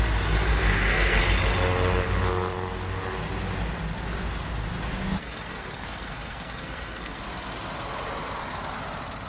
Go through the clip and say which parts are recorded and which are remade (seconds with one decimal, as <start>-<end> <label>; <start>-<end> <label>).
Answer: 0.0-0.5 recorded; 0.5-1.2 remade; 1.2-5.2 recorded; 5.2-7.2 remade; 7.2-9.3 recorded